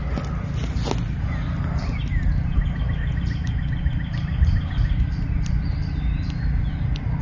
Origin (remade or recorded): recorded